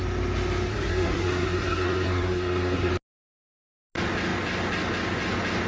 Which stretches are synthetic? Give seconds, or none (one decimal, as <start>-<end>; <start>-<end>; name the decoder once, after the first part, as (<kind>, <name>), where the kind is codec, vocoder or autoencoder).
0.7-2.9 (codec, SNAC)